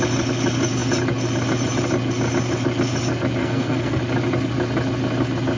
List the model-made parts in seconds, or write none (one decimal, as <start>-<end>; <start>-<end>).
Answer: 3.4-4.0